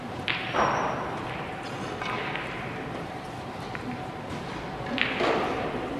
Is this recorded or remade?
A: recorded